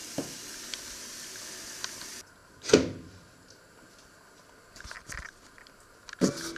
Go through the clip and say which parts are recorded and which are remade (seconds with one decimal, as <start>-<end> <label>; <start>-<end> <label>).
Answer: 0.0-6.6 recorded